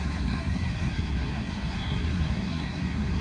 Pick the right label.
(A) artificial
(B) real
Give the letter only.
A